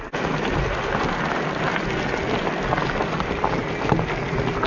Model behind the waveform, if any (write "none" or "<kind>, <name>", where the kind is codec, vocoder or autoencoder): none